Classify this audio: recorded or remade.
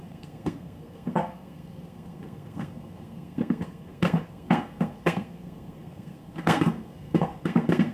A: remade